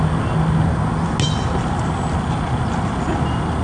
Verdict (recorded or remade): recorded